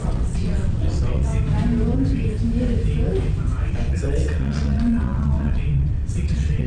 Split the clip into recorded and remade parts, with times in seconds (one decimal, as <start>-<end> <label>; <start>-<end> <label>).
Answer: 0.0-1.3 remade; 1.3-3.7 recorded; 3.7-6.7 remade